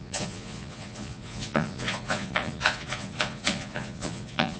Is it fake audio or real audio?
fake